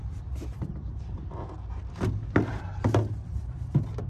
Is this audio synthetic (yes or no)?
no